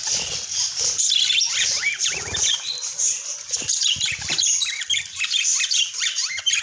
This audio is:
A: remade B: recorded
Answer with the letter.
A